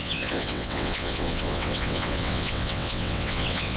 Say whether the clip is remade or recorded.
remade